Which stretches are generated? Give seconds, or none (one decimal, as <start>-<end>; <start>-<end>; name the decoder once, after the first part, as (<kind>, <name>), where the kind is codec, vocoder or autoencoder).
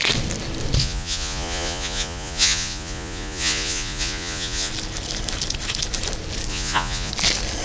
0.8-4.7 (vocoder, Vocos); 6.5-7.1